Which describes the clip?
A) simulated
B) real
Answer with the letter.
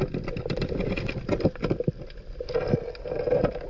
B